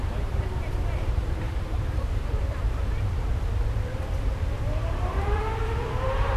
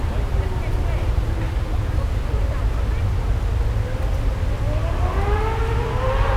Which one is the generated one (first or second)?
first